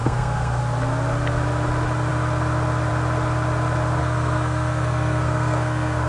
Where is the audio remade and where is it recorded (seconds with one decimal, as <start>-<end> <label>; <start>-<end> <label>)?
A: 0.0-0.6 remade; 0.6-4.0 recorded; 4.0-6.1 remade